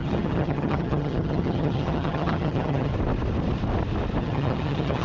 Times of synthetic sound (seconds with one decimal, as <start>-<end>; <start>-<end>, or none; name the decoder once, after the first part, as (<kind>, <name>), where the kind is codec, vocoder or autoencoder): 0.0-2.9 (vocoder, HiFi-GAN); 4.2-5.0